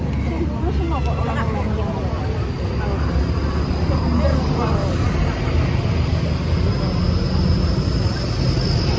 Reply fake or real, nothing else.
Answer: real